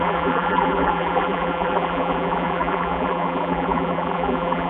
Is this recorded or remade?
remade